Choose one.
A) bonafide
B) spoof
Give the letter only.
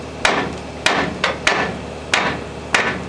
A